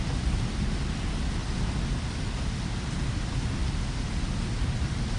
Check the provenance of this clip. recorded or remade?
recorded